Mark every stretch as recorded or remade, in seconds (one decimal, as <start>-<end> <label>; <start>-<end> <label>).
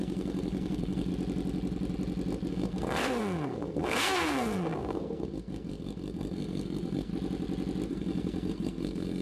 0.0-1.1 remade; 1.1-2.5 recorded; 2.5-7.1 remade; 7.1-7.9 recorded; 7.9-9.2 remade